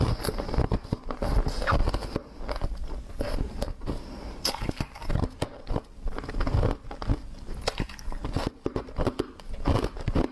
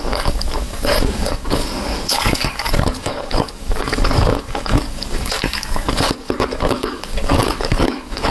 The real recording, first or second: first